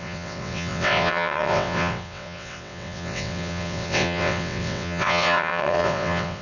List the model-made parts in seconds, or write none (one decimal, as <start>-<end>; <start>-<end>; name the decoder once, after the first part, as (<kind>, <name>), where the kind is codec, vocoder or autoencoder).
0.0-6.4 (vocoder, WaveNeXt)